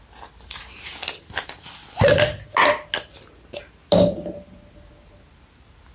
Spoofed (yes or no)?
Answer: no